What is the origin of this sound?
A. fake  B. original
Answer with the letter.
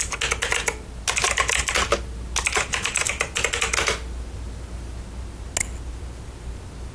B